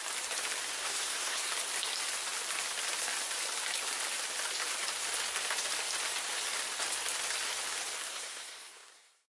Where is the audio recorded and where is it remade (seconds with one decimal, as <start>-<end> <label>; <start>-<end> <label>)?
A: 0.0-0.8 recorded; 0.8-1.5 remade; 1.5-8.1 recorded; 8.1-9.4 remade